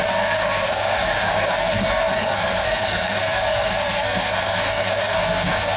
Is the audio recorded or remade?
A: remade